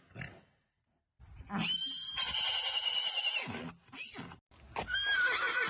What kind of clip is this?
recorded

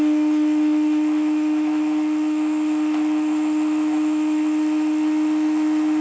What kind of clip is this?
remade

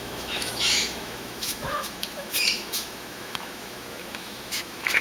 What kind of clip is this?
remade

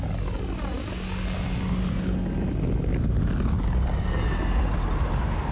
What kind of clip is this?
recorded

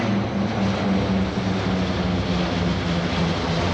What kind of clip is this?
recorded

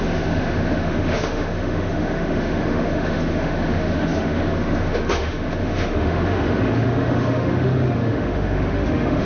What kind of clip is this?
remade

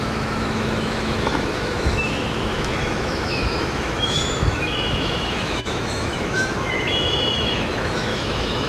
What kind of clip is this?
remade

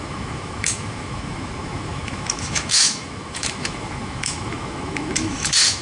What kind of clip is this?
remade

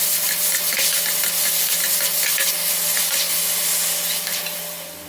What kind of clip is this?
recorded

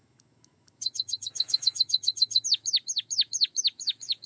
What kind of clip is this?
remade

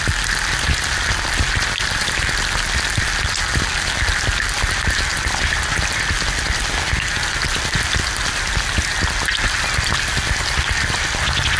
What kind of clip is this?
recorded